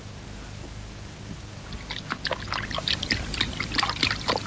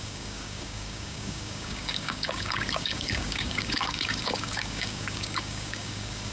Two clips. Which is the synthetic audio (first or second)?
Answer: second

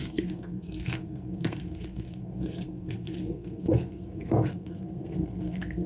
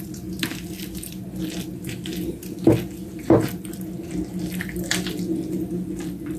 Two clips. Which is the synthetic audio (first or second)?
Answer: first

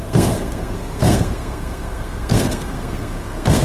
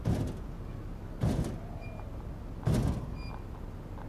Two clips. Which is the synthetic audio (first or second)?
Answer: first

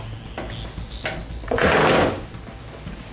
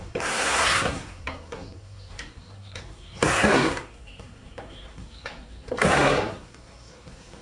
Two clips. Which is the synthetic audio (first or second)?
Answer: second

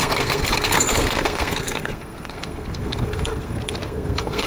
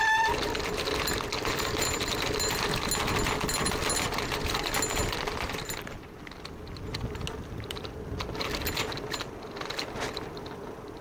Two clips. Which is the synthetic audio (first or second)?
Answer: first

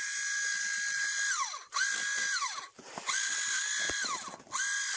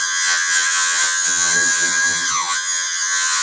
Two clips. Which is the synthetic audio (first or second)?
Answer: second